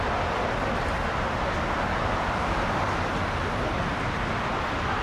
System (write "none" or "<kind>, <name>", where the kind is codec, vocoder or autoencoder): none